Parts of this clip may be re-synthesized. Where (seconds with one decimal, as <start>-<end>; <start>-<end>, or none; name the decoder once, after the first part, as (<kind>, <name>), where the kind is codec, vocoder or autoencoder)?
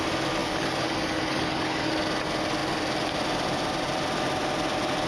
0.4-1.9 (codec, DAC)